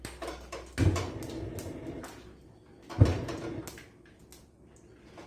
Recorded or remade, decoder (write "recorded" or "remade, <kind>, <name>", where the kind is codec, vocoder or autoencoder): recorded